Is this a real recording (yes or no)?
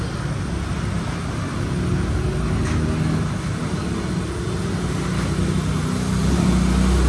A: yes